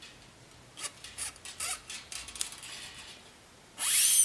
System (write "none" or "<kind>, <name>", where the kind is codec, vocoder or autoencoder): none